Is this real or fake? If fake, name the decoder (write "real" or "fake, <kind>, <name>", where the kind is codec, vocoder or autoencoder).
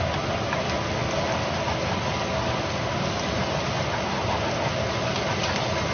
real